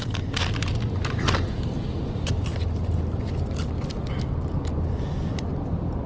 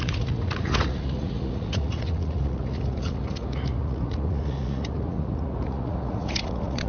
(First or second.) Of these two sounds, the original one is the first